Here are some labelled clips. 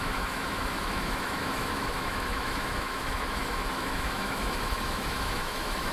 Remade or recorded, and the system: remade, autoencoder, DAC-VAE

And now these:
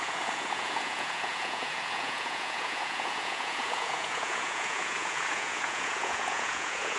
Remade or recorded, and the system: remade, vocoder, Vocos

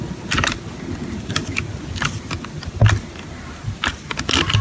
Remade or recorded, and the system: recorded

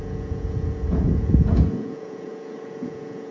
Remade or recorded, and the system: remade, vocoder, Vocos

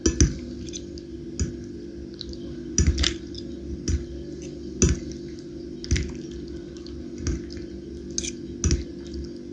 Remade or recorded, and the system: recorded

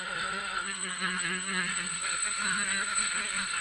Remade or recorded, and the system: remade, codec, SNAC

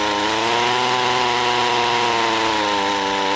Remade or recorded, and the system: recorded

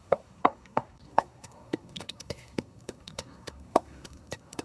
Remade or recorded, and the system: remade, codec, SNAC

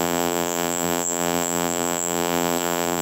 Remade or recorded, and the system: remade, vocoder, BigVGAN v2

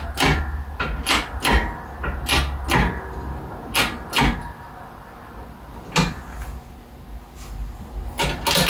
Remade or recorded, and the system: recorded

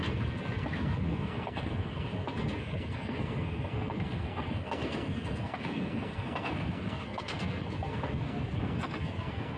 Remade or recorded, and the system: remade, codec, SNAC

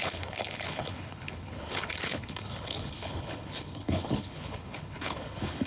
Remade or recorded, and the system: remade, codec, HILCodec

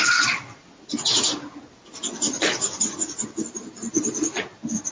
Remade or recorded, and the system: recorded